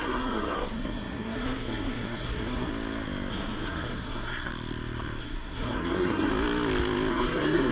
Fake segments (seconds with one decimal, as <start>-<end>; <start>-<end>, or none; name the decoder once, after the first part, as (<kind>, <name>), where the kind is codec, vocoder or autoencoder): 0.0-2.7 (codec, SNAC); 3.3-4.5; 5.2-6.3; 7.1-7.7

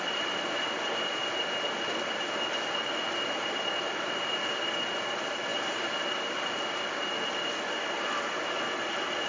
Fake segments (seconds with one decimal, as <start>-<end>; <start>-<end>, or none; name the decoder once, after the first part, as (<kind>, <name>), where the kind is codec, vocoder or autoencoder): none

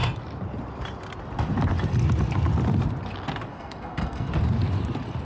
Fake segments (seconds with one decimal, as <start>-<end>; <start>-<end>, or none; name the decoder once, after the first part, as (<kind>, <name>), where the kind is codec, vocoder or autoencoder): 3.5-4.3 (codec, SNAC)

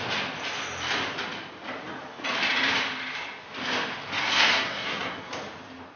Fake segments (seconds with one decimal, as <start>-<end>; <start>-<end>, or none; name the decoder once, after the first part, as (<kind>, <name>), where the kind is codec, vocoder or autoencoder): 4.2-5.3 (codec, SNAC)

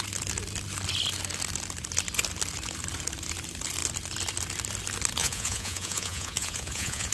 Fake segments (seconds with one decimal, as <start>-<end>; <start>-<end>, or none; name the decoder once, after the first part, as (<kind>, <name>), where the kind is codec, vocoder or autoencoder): 5.2-7.1 (vocoder, Vocos)